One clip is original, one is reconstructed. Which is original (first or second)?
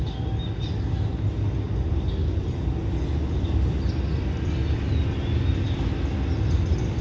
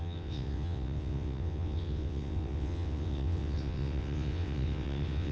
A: first